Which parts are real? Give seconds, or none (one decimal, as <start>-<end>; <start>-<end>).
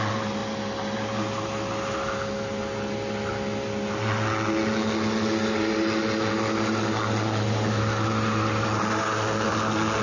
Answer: 0.0-10.0